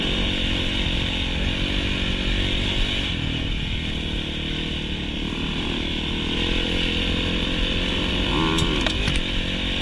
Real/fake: real